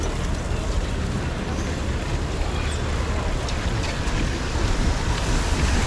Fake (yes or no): no